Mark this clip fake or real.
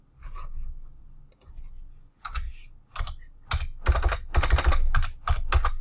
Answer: real